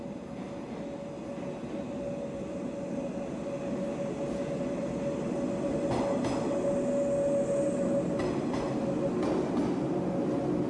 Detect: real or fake real